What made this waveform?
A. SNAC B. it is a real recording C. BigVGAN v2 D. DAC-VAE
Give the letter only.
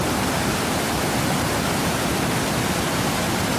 B